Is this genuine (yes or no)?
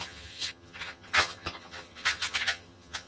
no